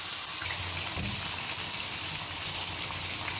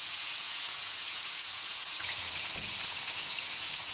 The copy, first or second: second